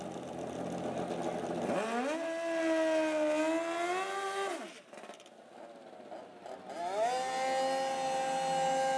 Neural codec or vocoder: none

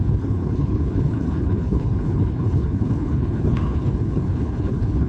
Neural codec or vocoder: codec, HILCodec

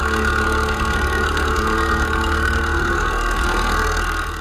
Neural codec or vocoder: codec, SNAC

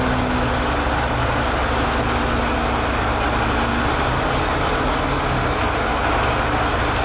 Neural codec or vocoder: none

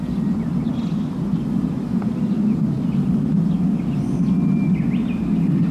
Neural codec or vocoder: none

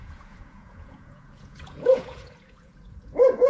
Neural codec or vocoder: vocoder, Vocos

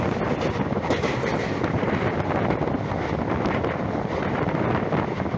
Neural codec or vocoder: none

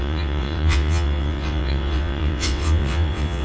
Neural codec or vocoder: vocoder, WaveNeXt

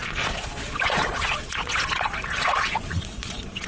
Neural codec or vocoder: vocoder, Vocos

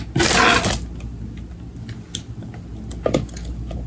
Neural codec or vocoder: none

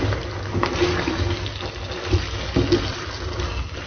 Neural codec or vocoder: none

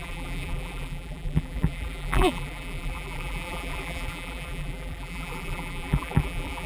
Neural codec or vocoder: vocoder, BigVGAN v2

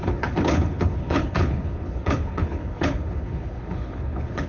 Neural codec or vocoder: codec, HILCodec